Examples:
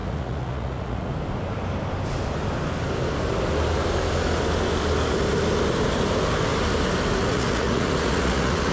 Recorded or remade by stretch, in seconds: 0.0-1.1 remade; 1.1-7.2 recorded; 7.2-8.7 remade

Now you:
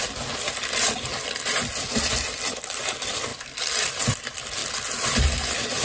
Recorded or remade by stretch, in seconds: 0.0-5.8 recorded